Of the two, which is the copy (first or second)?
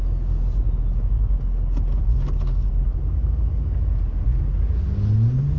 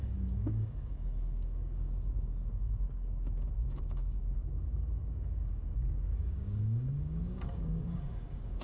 second